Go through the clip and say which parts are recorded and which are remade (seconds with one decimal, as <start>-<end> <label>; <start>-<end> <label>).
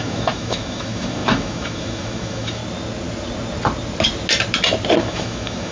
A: 0.0-2.6 remade; 2.6-5.0 recorded; 5.0-5.7 remade